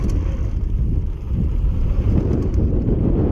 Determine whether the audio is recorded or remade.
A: remade